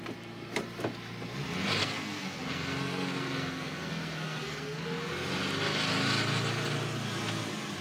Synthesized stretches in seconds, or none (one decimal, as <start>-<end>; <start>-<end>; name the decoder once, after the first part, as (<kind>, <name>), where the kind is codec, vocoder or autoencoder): 1.8-5.1 (codec, SNAC)